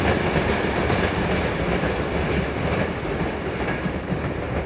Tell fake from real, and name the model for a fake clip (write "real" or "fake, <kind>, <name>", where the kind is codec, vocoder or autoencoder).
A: real